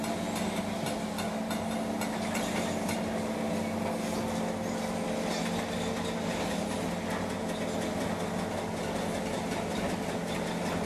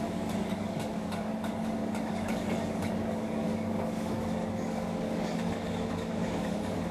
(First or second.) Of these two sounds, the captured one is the first